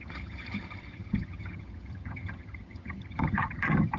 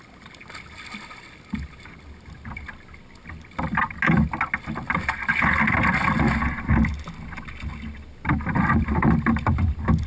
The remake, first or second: first